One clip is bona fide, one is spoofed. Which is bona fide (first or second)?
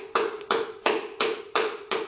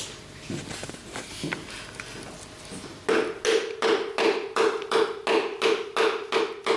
second